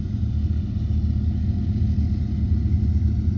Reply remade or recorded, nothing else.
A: recorded